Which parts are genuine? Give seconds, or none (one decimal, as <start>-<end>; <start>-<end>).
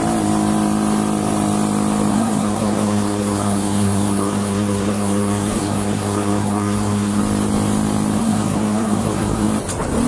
0.0-2.1; 7.2-8.2; 9.5-10.1